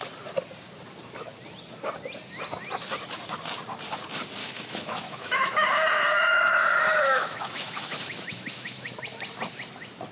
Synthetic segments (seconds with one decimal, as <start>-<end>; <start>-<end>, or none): 4.4-5.7; 6.3-8.9